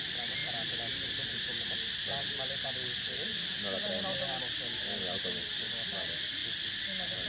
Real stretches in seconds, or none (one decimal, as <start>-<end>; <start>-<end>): 0.0-7.3